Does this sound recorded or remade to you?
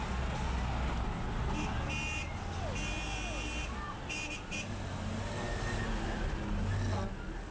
recorded